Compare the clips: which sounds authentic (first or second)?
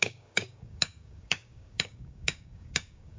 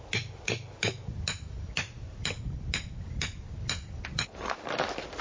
second